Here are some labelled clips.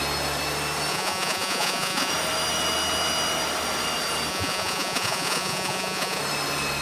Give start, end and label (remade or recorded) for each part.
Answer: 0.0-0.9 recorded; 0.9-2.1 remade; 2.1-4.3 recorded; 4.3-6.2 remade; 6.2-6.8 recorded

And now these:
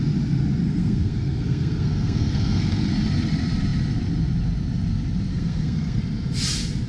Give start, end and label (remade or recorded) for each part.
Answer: 0.0-0.6 recorded; 0.6-2.9 remade; 2.9-5.3 recorded; 5.3-6.0 remade; 6.0-6.9 recorded

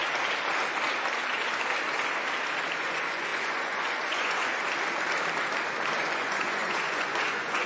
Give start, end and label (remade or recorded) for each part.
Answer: 0.0-2.8 recorded; 2.8-4.5 remade; 4.5-6.0 recorded; 6.0-7.7 remade

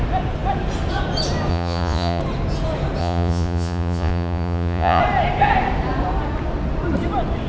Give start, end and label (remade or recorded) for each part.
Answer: 0.0-1.5 recorded; 1.5-2.2 remade; 2.2-3.0 recorded; 3.0-5.0 remade; 5.0-7.5 recorded